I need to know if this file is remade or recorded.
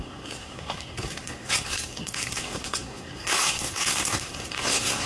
remade